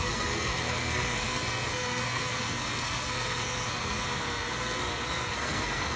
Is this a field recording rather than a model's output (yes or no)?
no